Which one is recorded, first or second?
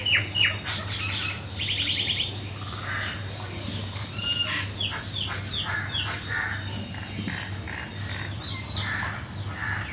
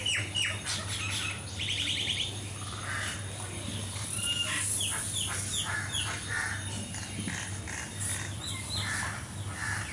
first